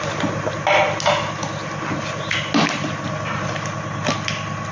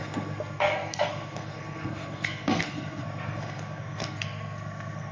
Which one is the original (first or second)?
first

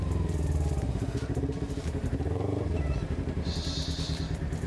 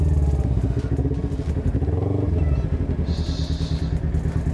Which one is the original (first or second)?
second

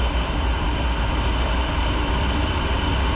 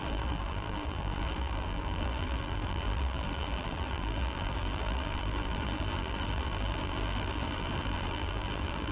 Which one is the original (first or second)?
first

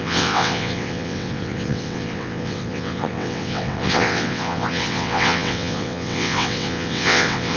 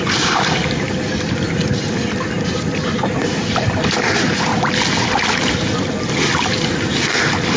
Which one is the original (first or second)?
second